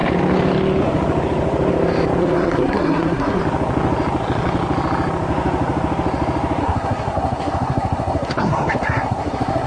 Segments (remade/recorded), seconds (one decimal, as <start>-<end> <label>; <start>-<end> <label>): 0.0-2.2 recorded; 2.2-3.4 remade; 3.4-6.6 recorded; 6.6-9.7 remade